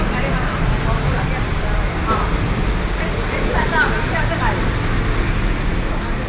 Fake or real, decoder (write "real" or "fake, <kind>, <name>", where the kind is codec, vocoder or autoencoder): real